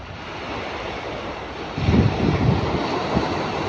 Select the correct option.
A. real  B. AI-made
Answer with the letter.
A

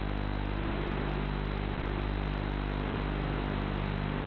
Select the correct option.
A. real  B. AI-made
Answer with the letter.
A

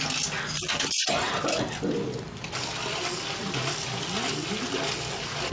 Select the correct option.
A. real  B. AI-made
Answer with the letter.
A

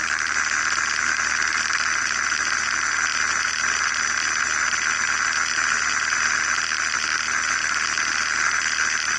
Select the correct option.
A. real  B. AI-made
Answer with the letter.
A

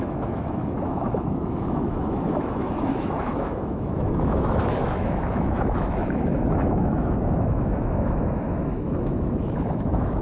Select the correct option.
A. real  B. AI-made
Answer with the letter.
B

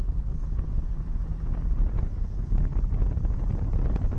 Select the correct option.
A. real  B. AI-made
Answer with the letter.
A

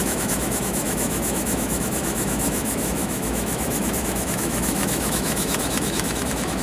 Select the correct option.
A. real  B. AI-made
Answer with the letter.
B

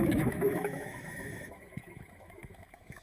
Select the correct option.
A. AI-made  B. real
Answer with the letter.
A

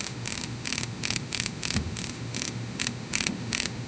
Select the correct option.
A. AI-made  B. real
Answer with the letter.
A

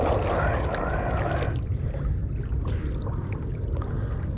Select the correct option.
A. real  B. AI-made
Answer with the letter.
A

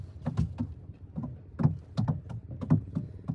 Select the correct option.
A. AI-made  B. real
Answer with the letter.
B